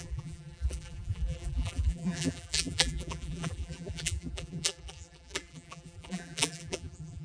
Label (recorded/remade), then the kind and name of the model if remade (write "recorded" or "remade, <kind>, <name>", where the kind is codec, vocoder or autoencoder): remade, vocoder, BigVGAN v2